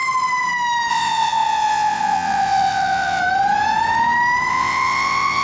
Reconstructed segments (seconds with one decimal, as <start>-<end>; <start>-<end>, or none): 0.9-3.2; 4.5-5.4